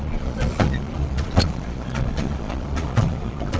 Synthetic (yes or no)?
yes